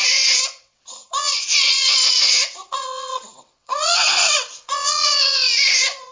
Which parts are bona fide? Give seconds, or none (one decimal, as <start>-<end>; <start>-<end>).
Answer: none